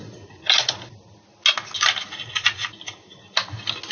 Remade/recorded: recorded